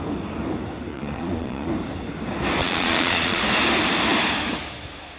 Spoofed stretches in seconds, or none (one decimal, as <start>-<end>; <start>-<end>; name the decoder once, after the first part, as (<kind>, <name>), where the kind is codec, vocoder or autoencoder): 0.9-1.7 (vocoder, Vocos); 2.6-3.4